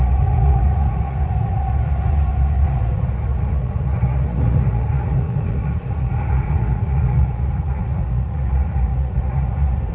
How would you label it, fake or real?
fake